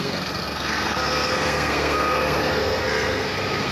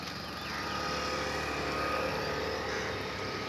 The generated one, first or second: first